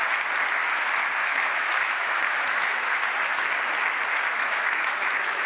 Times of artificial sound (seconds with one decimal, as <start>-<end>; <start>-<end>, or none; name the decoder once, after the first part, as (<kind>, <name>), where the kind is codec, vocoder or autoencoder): 1.3-2.9 (autoencoder, DAC-VAE); 4.1-5.5